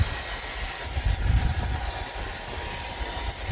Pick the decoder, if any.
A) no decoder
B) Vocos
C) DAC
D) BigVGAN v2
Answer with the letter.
A